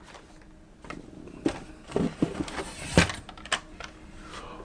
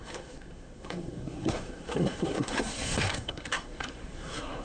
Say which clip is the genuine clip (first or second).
first